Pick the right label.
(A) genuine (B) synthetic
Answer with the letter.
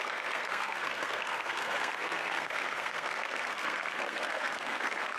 B